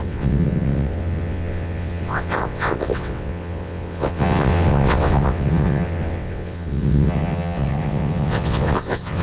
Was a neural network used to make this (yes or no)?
yes